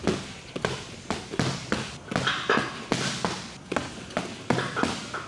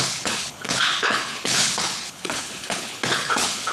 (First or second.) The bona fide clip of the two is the first